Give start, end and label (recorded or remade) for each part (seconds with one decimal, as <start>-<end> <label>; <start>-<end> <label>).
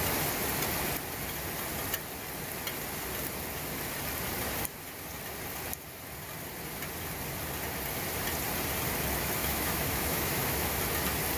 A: 0.0-9.4 recorded; 9.4-10.8 remade; 10.8-11.4 recorded